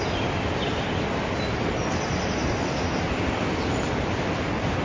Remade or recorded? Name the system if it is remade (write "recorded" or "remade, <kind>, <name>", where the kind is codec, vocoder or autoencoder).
recorded